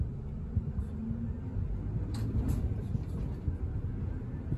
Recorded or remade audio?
recorded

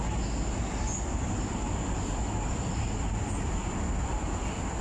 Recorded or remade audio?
recorded